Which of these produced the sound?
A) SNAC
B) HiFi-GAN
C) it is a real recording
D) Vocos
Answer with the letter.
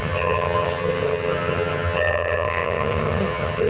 B